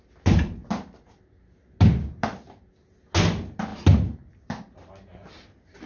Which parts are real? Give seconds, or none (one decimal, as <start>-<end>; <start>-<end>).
0.0-5.9